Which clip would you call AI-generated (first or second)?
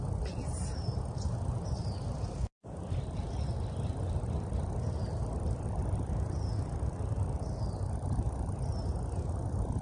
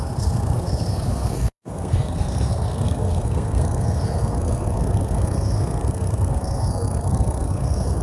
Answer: second